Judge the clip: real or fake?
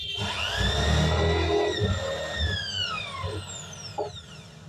real